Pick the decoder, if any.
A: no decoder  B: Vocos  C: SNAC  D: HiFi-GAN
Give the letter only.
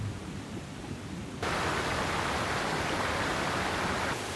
A